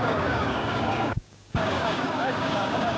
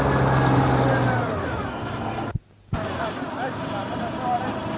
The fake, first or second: first